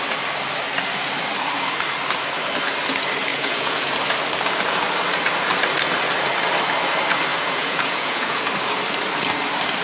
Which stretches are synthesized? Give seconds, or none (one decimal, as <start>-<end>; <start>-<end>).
3.3-3.9; 7.3-8.5